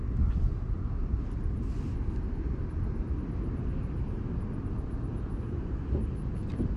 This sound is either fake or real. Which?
real